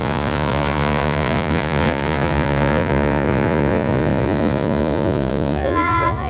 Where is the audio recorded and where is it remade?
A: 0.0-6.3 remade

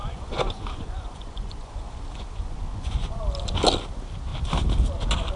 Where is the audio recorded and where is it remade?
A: 0.0-3.2 remade; 3.2-5.4 recorded

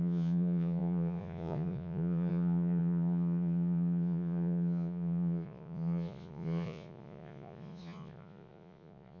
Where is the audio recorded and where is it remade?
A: 0.0-9.2 remade